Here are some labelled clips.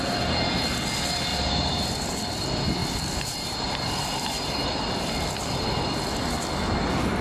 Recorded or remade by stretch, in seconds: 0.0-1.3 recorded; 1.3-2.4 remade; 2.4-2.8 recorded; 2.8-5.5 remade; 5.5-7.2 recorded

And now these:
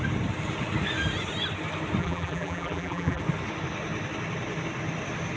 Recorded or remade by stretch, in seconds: 0.0-2.0 recorded; 2.0-3.2 remade; 3.2-5.4 recorded

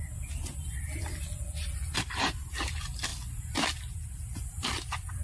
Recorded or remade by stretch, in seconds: 0.0-5.2 recorded